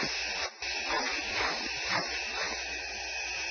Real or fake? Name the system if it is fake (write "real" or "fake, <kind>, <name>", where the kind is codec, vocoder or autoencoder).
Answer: real